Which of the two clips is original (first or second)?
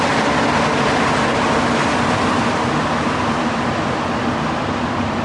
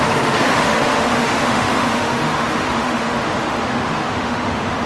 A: first